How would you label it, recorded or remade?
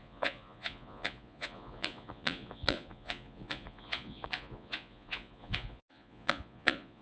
remade